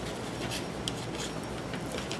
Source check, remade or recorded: recorded